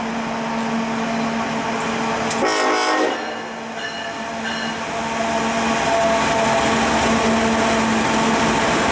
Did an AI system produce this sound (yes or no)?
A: no